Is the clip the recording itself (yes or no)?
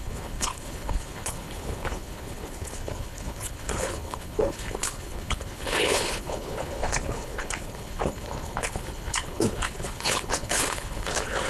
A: no